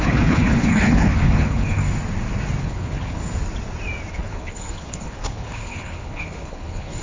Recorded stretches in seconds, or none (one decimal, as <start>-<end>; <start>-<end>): 1.8-2.6; 3.2-4.1